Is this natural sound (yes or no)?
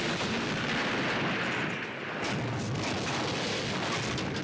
yes